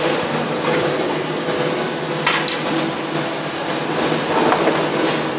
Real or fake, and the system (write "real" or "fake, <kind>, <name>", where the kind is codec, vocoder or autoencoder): real